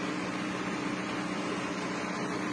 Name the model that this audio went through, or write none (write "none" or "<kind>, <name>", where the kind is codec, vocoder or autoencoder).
none